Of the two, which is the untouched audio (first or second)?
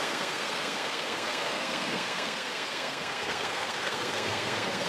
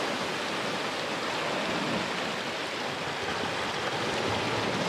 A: second